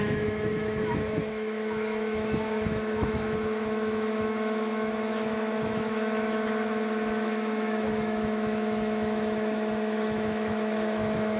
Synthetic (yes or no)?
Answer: yes